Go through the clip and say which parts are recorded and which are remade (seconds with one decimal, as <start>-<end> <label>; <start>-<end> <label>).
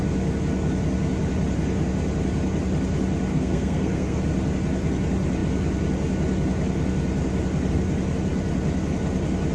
0.0-3.3 recorded; 3.3-4.2 remade; 4.2-9.5 recorded